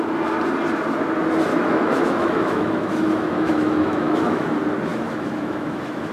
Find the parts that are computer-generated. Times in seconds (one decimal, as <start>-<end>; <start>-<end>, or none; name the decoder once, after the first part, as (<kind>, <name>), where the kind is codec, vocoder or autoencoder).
1.5-4.5 (autoencoder, DAC-VAE); 4.9-6.1

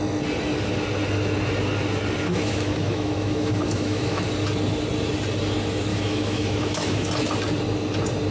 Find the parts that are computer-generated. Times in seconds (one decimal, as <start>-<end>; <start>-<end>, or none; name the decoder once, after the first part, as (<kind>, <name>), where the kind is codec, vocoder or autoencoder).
2.2-4.2 (autoencoder, DAC-VAE); 5.9-7.1

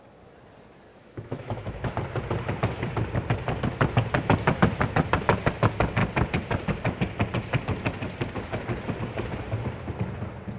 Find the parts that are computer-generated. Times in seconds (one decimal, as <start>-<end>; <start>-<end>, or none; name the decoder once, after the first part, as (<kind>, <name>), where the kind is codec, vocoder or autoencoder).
0.9-1.9 (autoencoder, DAC-VAE)

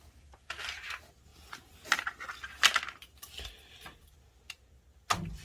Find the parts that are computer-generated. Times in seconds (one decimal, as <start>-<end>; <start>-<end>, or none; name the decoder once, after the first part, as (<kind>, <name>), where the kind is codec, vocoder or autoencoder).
none

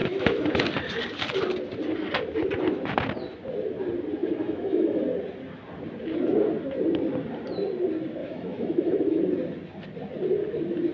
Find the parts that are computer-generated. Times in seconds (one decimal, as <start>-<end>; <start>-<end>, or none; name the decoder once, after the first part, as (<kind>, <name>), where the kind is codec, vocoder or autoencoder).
0.0-0.6 (autoencoder, DAC-VAE); 4.2-5.0; 8.2-9.2

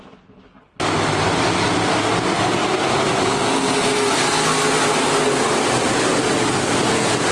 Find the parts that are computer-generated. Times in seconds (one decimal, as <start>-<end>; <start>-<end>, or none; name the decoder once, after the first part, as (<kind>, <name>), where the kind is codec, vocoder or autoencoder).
none

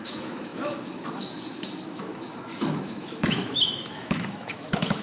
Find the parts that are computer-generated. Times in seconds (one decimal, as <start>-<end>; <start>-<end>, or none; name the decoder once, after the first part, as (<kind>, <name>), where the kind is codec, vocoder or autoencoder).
0.0-5.0 (autoencoder, DAC-VAE)

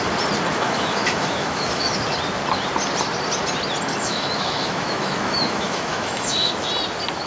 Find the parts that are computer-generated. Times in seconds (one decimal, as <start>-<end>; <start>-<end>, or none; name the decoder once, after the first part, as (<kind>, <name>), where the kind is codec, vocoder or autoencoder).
0.5-2.0 (autoencoder, DAC-VAE); 3.9-6.7